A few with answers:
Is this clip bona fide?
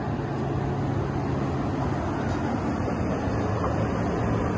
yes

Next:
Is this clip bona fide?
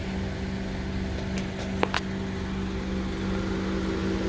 yes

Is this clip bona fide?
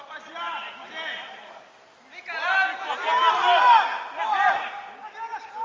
yes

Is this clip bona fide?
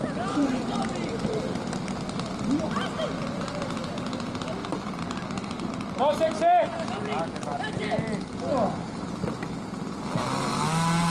yes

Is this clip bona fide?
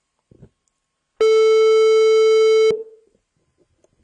yes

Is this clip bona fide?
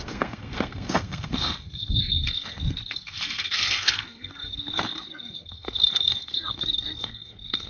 no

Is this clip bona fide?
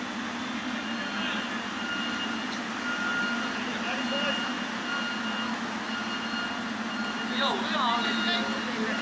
yes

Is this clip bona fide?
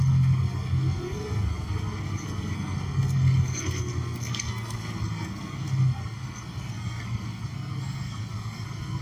no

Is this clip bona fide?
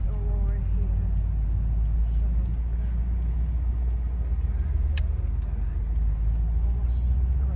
yes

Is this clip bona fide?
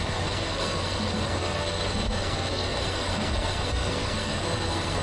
no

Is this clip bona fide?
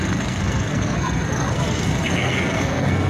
no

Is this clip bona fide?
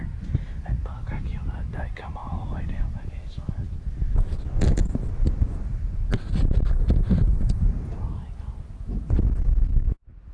yes